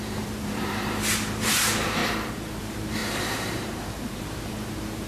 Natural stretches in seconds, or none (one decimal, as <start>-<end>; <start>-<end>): 2.0-2.6